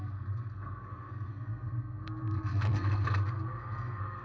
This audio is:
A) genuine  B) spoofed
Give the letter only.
B